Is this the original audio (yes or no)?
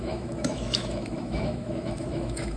no